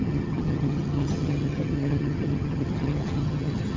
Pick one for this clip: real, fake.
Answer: fake